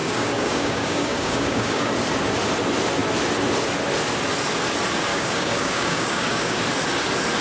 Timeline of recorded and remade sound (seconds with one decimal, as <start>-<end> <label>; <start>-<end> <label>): 0.0-1.9 remade; 1.9-5.1 recorded; 5.1-6.6 remade; 6.6-7.4 recorded